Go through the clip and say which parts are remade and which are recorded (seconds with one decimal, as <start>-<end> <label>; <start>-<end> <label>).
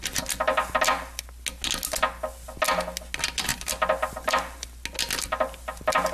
0.0-6.1 recorded